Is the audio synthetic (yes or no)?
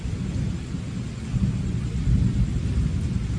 no